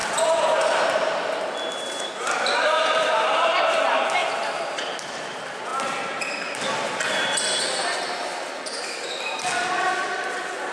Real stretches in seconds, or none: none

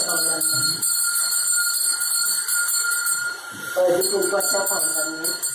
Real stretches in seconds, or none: 1.7-2.5; 4.1-5.5

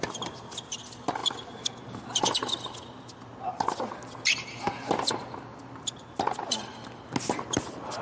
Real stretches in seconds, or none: 0.0-8.0

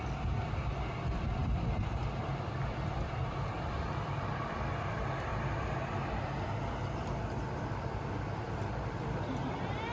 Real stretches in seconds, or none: 5.3-8.2

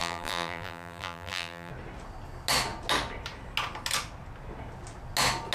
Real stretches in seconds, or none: 1.7-5.5